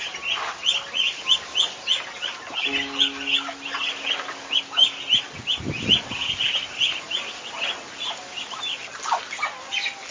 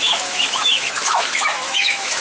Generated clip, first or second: second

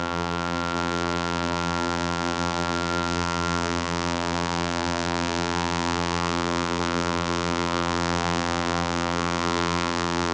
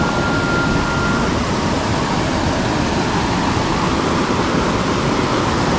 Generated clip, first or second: first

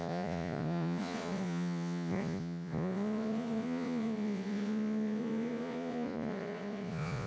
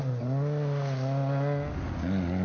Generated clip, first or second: first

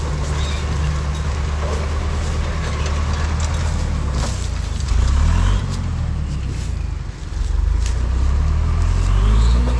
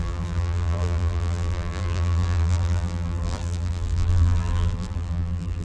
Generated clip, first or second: second